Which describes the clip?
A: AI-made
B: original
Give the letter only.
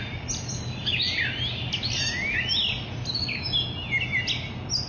B